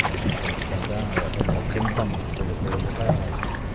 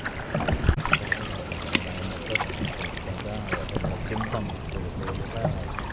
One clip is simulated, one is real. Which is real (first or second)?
second